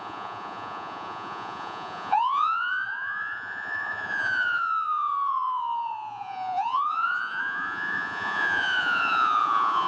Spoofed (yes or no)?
yes